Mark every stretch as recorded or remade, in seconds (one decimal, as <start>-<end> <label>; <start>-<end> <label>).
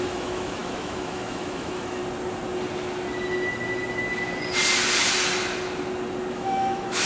0.0-2.0 remade; 2.0-6.3 recorded; 6.3-7.1 remade